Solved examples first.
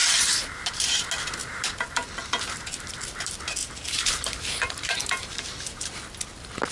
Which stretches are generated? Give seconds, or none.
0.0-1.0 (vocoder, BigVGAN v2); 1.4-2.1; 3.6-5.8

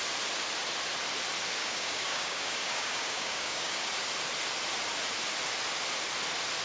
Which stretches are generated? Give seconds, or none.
1.6-3.9 (codec, DAC)

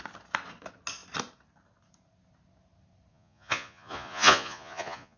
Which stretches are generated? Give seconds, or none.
3.1-5.2 (vocoder, Vocos)

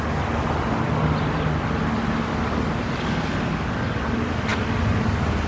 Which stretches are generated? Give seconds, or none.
none

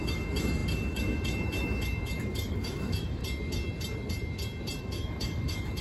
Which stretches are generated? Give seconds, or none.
0.0-3.2 (autoencoder, DAC-VAE); 4.8-5.8

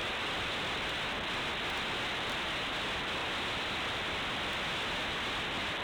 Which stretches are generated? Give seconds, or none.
3.2-3.7 (vocoder, BigVGAN v2)